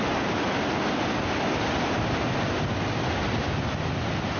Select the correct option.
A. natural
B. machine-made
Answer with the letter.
A